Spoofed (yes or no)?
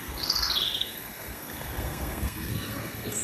yes